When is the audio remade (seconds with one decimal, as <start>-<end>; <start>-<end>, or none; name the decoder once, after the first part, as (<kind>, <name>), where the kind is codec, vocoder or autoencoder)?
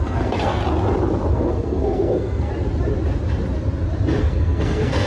0.0-0.6 (codec, SNAC); 1.3-2.5; 4.2-5.1